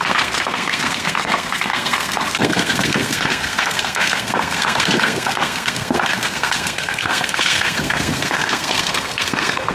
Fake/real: fake